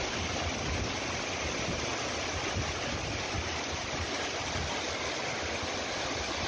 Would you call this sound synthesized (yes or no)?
no